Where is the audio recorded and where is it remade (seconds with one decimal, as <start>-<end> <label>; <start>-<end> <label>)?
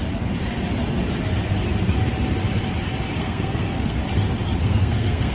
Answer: 0.0-3.2 recorded; 3.2-4.0 remade; 4.0-4.6 recorded; 4.6-5.3 remade